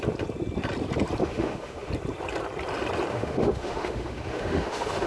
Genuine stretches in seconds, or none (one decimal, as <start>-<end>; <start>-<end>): 0.0-1.2; 1.9-3.1